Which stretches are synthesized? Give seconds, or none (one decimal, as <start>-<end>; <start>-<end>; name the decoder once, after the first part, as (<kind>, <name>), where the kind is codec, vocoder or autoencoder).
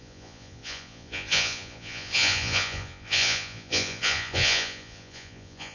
0.0-5.7 (vocoder, Vocos)